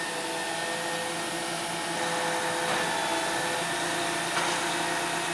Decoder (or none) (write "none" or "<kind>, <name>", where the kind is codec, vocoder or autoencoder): none